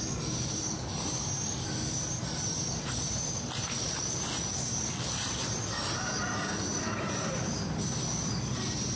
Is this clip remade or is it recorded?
recorded